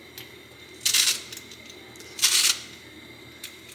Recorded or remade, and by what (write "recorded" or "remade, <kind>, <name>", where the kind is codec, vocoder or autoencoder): recorded